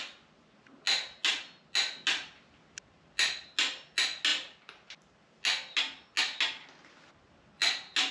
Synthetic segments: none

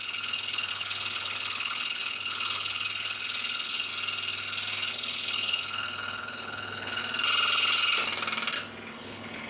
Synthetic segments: 0.0-3.9 (codec, HILCodec); 4.9-7.0; 8.9-9.5

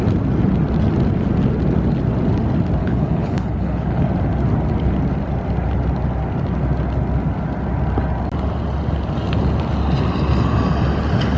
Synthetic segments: 2.8-4.0 (codec, HILCodec)

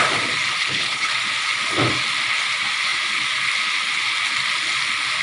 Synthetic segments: 0.6-1.1 (codec, HILCodec)

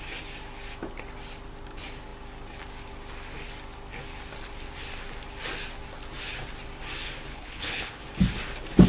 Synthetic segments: 7.3-8.0 (codec, HILCodec)

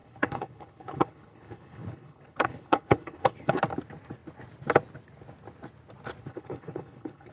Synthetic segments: 0.0-3.6 (codec, HILCodec); 6.2-7.3

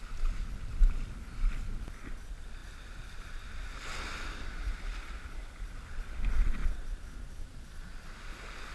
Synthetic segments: none